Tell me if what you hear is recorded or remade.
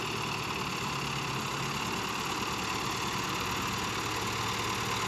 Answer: recorded